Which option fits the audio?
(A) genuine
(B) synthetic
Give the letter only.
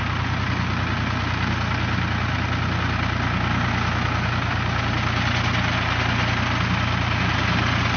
A